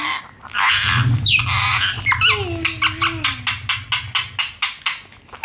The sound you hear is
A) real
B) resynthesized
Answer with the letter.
A